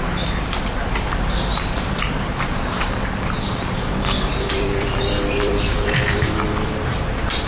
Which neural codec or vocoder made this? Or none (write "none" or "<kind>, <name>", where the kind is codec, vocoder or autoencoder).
vocoder, BigVGAN v2